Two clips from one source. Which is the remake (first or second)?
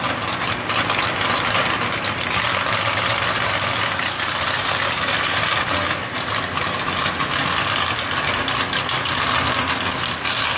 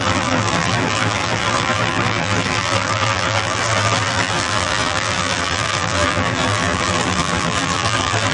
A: second